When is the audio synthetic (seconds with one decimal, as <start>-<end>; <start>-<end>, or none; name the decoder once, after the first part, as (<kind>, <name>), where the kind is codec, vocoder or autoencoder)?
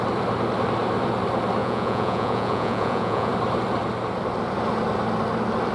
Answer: 1.6-3.3 (vocoder, Vocos)